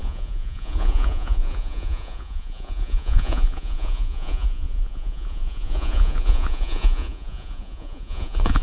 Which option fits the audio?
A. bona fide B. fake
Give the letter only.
B